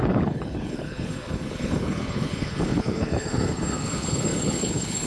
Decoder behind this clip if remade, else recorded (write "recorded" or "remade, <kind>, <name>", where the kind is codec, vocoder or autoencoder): remade, codec, HILCodec